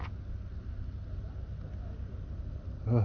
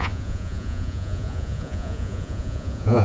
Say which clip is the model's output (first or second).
second